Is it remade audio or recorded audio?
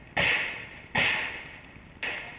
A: recorded